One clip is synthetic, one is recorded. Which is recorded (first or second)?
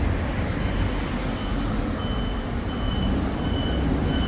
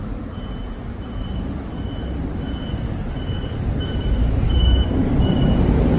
first